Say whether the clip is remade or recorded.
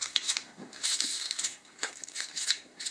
remade